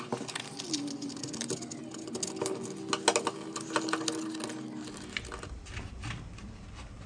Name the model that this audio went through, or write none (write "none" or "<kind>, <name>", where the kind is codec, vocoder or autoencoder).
none